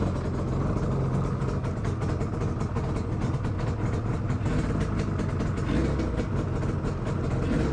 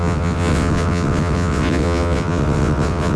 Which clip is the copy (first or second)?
second